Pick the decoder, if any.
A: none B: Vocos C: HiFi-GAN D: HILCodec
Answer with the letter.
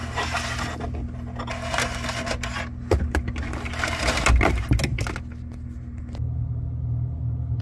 A